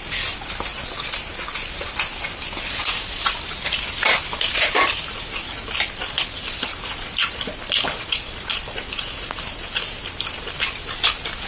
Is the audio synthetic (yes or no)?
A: no